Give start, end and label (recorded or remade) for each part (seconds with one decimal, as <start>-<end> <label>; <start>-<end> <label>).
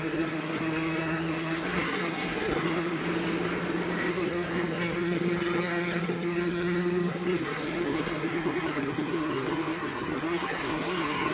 0.0-3.0 remade; 3.0-4.1 recorded; 4.1-11.3 remade